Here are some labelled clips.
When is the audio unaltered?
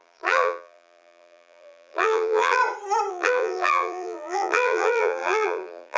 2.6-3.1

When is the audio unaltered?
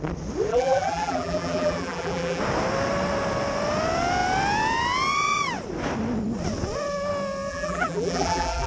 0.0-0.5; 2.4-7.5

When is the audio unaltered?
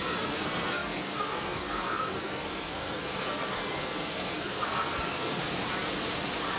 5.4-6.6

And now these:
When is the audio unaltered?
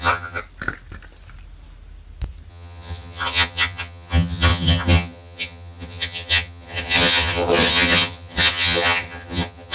0.4-2.5